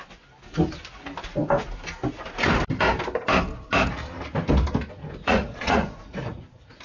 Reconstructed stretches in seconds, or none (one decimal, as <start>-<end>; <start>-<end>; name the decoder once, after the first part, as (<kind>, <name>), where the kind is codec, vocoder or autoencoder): 5.2-6.8 (vocoder, Vocos)